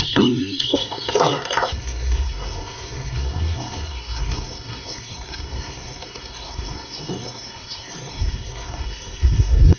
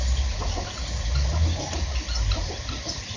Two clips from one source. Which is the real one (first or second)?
second